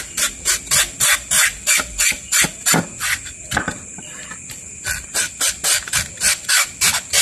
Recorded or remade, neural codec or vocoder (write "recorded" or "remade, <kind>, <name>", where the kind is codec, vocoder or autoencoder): recorded